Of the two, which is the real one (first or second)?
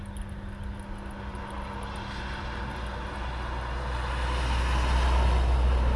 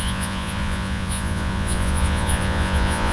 first